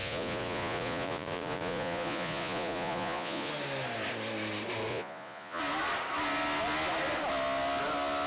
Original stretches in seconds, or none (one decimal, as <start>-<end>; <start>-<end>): 3.5-4.9; 5.6-8.3